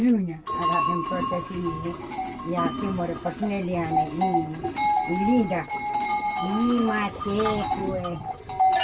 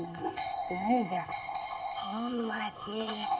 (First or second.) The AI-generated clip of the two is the second